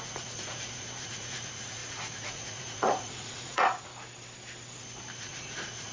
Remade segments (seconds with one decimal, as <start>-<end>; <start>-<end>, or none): 0.0-3.9; 5.2-5.9